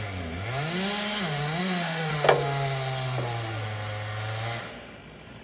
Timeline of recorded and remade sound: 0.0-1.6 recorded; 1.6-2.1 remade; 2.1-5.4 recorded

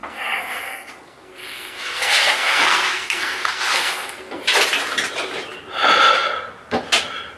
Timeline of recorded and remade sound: 0.0-4.4 remade; 4.4-7.4 recorded

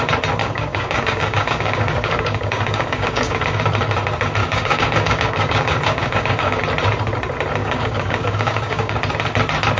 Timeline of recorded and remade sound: 0.0-0.4 recorded; 0.4-3.6 remade; 3.6-4.4 recorded; 4.4-6.6 remade; 6.6-7.6 recorded; 7.6-9.0 remade; 9.0-9.8 recorded